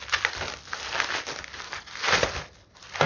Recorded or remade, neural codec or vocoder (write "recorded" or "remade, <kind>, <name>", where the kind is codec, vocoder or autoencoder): recorded